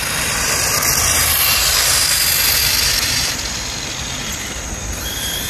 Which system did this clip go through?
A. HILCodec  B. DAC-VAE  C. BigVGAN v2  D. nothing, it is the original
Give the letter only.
D